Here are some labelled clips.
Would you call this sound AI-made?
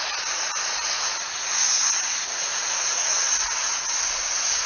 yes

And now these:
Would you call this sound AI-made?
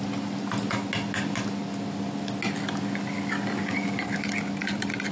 no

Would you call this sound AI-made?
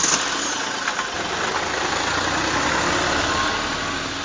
no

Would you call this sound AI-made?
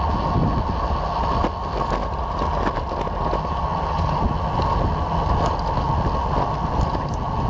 no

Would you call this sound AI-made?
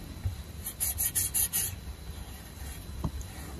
no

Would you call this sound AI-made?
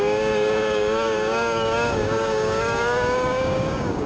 yes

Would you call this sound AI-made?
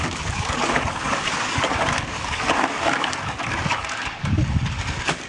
yes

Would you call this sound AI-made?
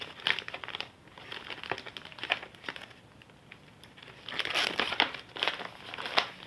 no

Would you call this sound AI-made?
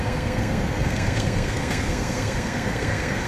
yes